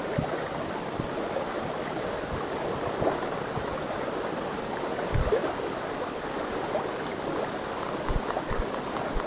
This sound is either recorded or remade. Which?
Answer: remade